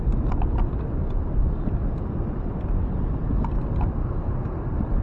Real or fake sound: real